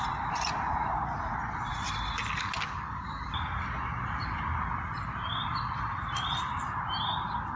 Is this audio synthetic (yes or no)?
no